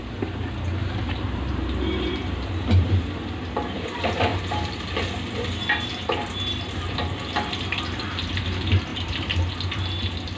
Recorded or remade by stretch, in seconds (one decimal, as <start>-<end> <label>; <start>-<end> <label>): 0.0-0.8 recorded; 0.8-3.0 remade; 3.0-4.3 recorded; 4.3-4.8 remade; 4.8-8.9 recorded; 8.9-9.5 remade; 9.5-10.4 recorded